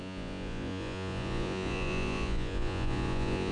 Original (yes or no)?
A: no